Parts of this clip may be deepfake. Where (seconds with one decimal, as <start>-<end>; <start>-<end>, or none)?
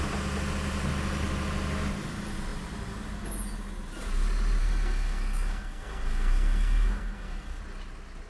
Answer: 4.6-7.6